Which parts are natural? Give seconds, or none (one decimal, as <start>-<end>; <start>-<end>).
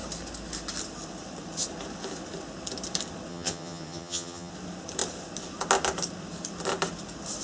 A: 0.0-3.3; 4.5-7.4